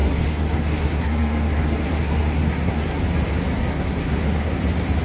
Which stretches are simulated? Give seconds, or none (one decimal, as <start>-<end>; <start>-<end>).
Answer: 0.0-3.0; 3.6-4.6